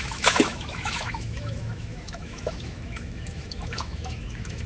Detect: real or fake fake